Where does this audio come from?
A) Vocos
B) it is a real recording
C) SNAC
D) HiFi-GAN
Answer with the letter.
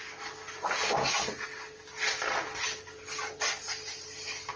B